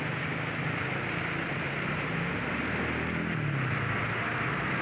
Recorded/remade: recorded